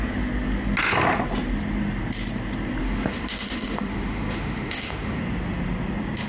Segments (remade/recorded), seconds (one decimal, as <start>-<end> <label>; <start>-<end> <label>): 0.0-2.8 recorded; 2.8-5.2 remade; 5.2-6.3 recorded